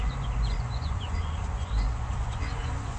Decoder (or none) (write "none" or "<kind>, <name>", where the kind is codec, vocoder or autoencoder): vocoder, Vocos